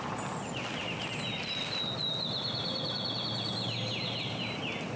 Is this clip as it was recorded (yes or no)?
yes